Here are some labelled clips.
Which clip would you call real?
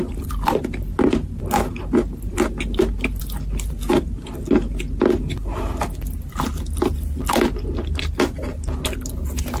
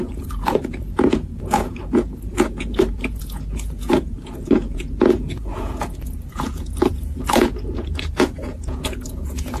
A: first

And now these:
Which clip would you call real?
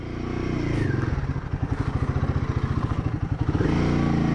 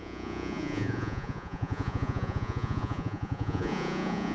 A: first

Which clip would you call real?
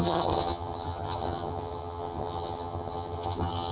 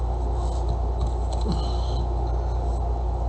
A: second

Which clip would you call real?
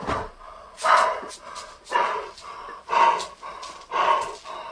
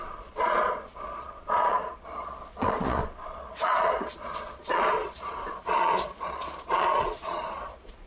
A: first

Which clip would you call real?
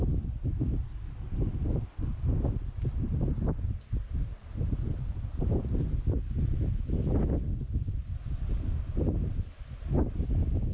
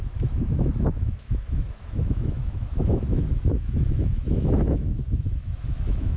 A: first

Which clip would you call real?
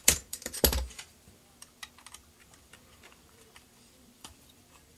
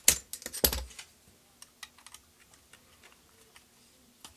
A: second